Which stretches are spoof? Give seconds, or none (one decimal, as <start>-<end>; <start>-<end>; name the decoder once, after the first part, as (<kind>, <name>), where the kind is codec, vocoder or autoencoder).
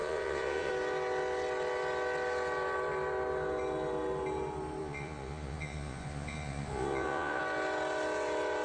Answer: 0.0-0.7 (vocoder, Vocos); 4.8-7.4